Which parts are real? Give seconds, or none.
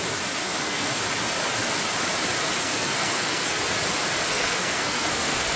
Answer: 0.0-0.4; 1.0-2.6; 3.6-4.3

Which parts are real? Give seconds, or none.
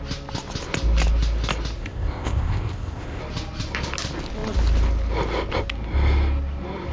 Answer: 0.0-1.8; 3.2-6.9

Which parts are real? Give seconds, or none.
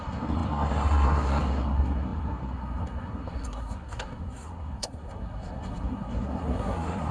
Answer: none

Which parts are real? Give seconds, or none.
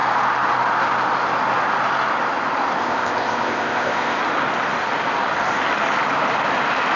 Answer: 0.0-2.8; 4.2-7.0